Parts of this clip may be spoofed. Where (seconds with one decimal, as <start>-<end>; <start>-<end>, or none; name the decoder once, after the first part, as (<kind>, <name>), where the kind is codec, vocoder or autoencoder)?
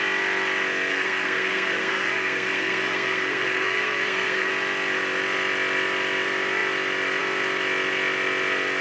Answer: 0.9-4.5 (codec, SNAC)